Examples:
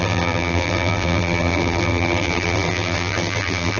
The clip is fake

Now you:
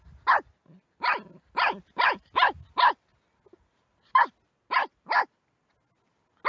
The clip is real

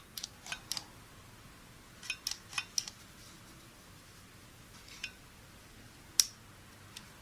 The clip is real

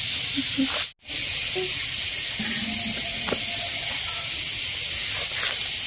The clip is real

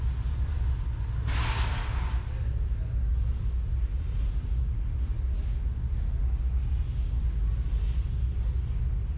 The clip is real